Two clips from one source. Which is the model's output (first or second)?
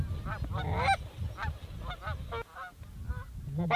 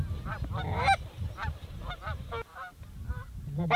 second